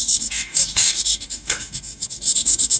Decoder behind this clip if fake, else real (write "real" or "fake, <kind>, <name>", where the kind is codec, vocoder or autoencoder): fake, codec, DAC